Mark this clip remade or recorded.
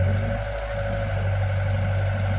recorded